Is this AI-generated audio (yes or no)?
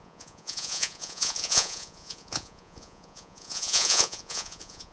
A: yes